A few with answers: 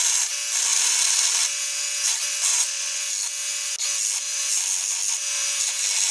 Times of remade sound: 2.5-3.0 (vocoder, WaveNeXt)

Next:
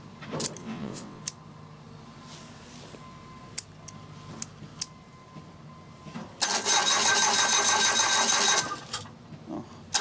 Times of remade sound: 0.6-1.2 (vocoder, WaveNeXt)

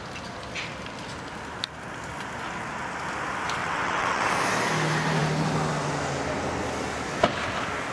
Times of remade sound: 3.6-4.3 (vocoder, WaveNeXt)

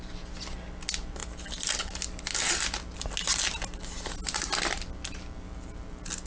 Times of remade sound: none